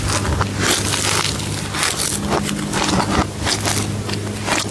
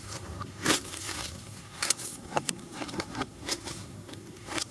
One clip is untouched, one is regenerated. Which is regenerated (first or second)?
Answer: second